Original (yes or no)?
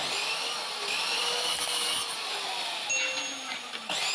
yes